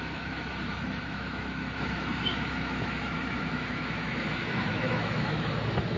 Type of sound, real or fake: fake